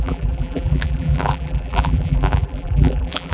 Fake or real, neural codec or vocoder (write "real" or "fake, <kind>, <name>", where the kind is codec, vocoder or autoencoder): fake, vocoder, BigVGAN v2